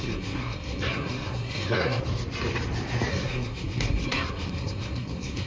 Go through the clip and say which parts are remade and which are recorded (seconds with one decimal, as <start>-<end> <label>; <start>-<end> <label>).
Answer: 0.0-2.0 remade; 2.0-3.1 recorded; 3.1-5.5 remade